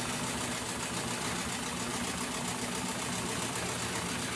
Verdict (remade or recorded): recorded